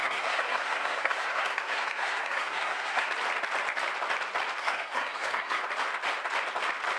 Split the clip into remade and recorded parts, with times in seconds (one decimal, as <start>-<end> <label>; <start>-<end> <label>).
0.0-3.1 remade; 3.1-4.6 recorded; 4.6-5.6 remade; 5.6-7.0 recorded